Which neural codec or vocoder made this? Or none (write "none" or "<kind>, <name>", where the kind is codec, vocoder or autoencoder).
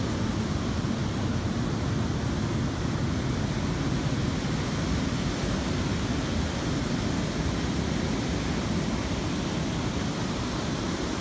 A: none